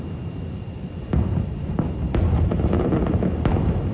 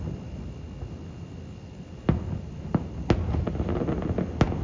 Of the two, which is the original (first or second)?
second